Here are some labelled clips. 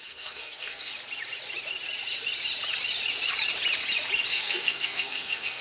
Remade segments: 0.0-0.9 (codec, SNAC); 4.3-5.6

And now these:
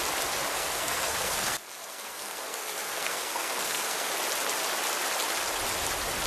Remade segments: 0.5-4.1 (codec, SNAC)

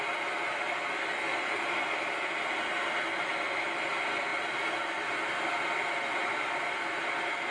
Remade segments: none

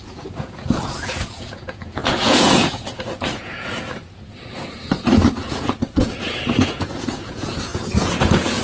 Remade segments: 0.0-8.6 (vocoder, Vocos)

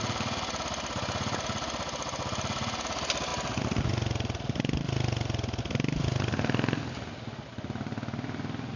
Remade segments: none

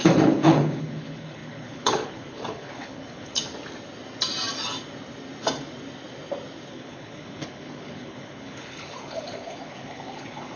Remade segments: 0.0-3.4 (codec, HILCodec); 6.7-10.6

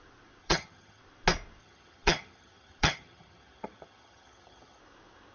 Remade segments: 0.4-1.0 (vocoder, HiFi-GAN); 1.6-4.8